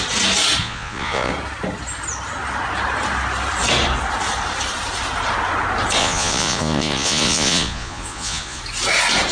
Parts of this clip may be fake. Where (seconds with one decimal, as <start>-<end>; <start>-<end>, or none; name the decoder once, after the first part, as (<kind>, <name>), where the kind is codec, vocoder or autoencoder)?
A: 0.6-1.3 (vocoder, Vocos); 6.0-8.6